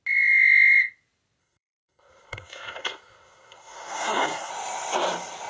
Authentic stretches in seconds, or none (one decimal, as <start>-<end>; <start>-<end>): 0.0-1.4; 4.5-5.5